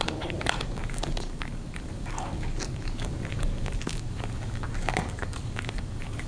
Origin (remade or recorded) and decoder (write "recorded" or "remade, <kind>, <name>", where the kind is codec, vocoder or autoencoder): remade, codec, DAC